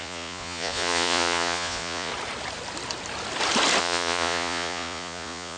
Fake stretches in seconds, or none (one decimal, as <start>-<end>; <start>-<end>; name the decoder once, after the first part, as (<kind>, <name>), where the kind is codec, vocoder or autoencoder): 0.0-2.1 (vocoder, Vocos); 3.8-5.6